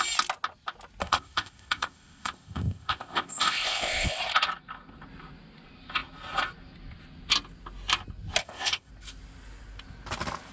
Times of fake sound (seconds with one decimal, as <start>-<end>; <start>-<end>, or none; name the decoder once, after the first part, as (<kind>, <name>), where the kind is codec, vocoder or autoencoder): 1.0-4.2 (codec, ZipCodec); 8.4-8.9

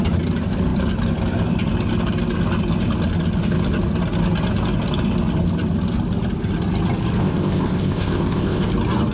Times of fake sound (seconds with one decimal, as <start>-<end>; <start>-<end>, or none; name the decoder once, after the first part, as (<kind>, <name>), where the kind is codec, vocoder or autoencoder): 7.2-8.7 (codec, ZipCodec)

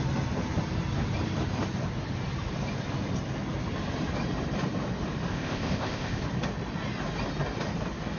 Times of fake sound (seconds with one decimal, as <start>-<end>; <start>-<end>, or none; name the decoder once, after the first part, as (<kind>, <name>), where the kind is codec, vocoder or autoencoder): 5.3-6.2 (codec, ZipCodec)